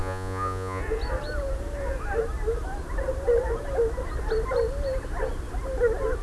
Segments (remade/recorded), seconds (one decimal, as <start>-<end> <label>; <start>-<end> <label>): 0.0-0.8 remade; 0.8-6.2 recorded